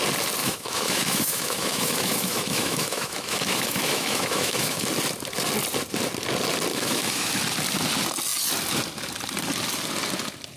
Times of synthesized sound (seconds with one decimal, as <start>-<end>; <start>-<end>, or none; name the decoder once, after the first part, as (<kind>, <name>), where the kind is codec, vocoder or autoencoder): 0.4-4.9 (autoencoder, DAC-VAE); 6.7-7.4